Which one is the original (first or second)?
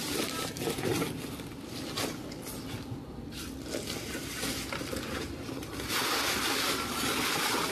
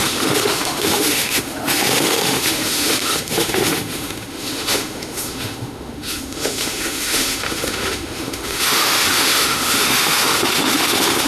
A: first